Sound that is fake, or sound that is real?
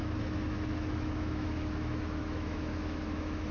fake